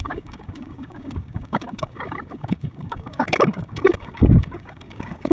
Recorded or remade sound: remade